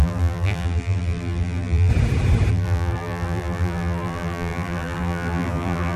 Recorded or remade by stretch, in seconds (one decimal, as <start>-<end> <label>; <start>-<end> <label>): 0.0-1.9 remade; 1.9-2.5 recorded; 2.5-6.0 remade